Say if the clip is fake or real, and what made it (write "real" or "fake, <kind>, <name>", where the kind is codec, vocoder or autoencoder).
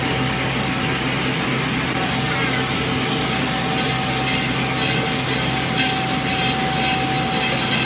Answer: real